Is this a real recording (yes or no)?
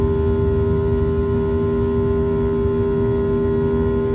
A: yes